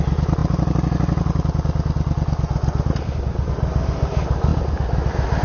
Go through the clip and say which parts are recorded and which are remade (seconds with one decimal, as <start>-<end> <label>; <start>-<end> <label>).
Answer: 0.0-5.4 recorded